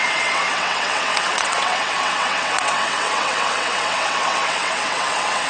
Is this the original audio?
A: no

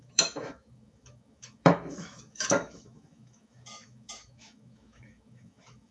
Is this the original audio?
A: no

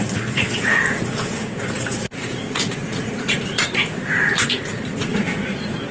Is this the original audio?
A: no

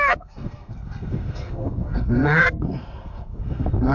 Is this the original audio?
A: no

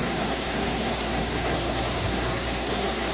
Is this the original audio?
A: no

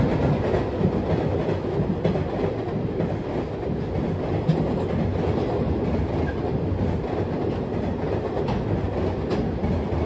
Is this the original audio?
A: yes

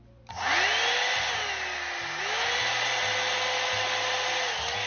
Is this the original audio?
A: yes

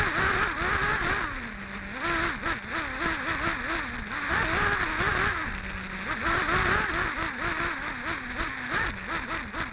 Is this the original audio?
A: yes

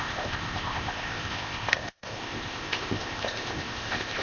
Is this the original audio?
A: no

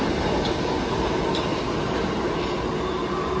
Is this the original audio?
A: yes